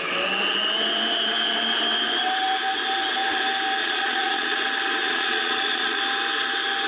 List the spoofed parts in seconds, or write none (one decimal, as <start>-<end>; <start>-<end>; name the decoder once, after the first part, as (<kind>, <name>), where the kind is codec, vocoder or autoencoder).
3.8-4.6 (vocoder, Vocos); 5.0-6.0